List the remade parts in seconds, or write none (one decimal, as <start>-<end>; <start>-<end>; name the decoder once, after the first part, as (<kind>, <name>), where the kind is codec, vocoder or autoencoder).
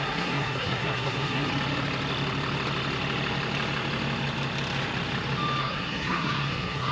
0.0-1.5 (codec, SNAC); 5.6-6.9